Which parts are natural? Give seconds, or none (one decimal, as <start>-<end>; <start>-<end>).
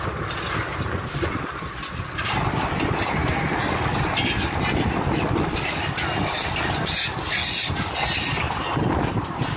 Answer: 0.0-9.6